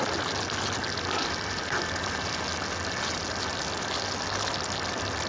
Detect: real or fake real